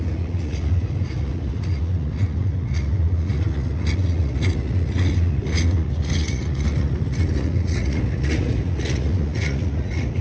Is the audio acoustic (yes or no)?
no